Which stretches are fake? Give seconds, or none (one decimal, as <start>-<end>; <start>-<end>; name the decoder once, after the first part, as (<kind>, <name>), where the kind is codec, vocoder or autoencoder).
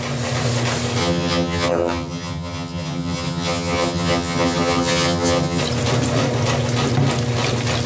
1.0-5.6 (vocoder, HiFi-GAN)